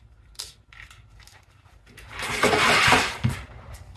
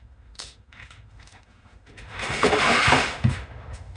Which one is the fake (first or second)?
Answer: second